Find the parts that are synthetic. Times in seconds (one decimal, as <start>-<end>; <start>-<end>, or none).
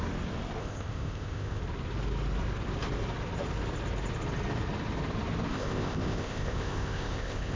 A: 0.6-1.6; 5.5-7.6